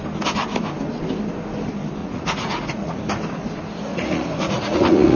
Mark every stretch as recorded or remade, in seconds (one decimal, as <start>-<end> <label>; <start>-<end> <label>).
0.0-2.0 recorded; 2.0-3.0 remade; 3.0-3.9 recorded; 3.9-5.2 remade